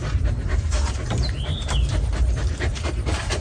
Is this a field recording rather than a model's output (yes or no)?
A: no